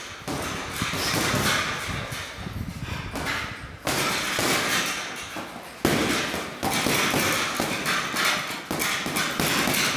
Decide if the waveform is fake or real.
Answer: real